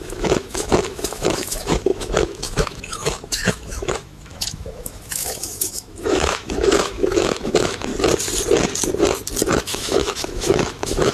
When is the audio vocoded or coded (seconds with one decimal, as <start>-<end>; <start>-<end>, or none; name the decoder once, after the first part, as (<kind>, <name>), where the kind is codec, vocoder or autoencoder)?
0.0-7.9 (autoencoder, DAC-VAE); 9.6-11.1